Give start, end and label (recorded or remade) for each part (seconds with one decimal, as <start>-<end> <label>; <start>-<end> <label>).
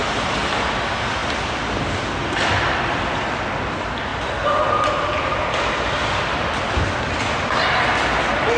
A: 0.0-8.6 recorded